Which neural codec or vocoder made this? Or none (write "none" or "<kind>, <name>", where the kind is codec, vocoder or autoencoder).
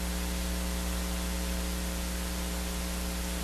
none